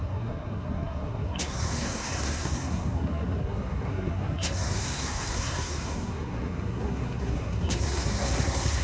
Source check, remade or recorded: remade